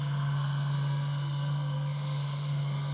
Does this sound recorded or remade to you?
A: remade